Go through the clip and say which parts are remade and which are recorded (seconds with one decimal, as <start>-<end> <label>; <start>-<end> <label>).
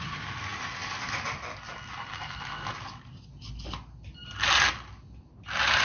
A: 0.0-5.8 recorded